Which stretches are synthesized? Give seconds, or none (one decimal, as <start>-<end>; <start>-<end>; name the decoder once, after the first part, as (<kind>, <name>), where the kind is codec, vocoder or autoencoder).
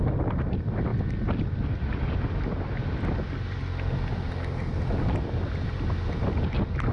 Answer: none